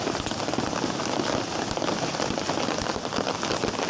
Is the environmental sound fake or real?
real